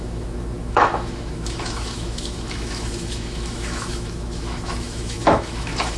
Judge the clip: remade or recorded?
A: remade